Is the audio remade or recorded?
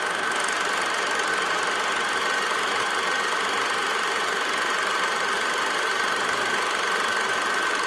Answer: recorded